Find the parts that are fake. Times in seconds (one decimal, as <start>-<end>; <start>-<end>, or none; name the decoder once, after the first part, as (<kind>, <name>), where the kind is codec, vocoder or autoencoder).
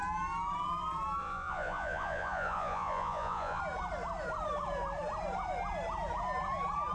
1.2-3.6 (vocoder, Vocos)